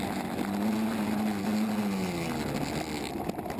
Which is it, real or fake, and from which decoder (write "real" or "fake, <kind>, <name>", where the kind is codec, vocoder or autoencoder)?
real